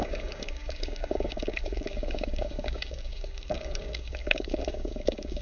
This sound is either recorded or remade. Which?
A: remade